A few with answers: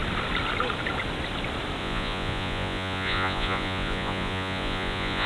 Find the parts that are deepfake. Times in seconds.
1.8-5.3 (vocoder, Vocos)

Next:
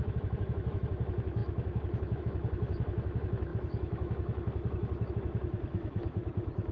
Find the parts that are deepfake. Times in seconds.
0.0-6.7 (autoencoder, DAC-VAE)

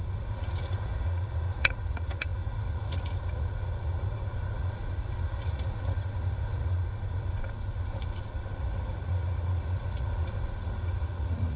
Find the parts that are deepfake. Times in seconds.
0.0-11.6 (vocoder, Vocos)

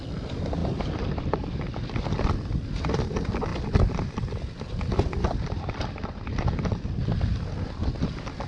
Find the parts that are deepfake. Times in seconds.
none

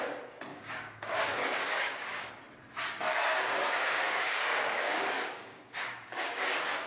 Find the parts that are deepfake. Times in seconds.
0.5-2.3 (codec, DAC); 3.1-6.9

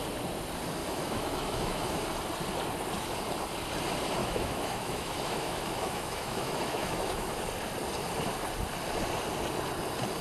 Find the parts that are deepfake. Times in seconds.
0.8-2.0 (autoencoder, DAC-VAE); 4.2-7.4

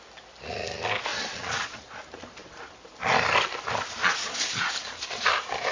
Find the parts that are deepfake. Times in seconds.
1.1-2.0 (vocoder, Vocos); 4.0-4.7